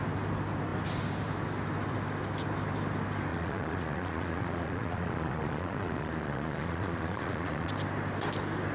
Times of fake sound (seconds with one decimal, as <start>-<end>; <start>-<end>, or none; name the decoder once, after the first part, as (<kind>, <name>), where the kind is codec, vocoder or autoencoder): 3.3-7.7 (vocoder, Vocos)